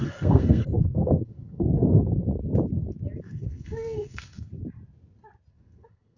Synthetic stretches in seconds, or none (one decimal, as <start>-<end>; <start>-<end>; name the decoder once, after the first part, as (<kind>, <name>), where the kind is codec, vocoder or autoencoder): 0.0-2.4 (codec, SNAC); 3.2-4.5; 5.5-6.2